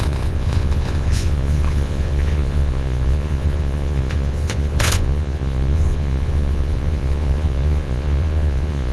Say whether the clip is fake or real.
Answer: fake